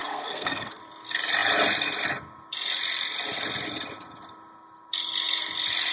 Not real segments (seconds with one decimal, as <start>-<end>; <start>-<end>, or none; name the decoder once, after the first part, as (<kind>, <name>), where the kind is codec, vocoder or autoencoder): 0.0-0.8 (codec, SNAC)